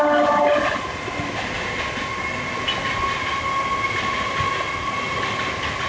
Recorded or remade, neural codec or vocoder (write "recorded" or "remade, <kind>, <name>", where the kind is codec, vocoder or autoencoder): recorded